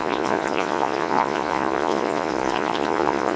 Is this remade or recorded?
remade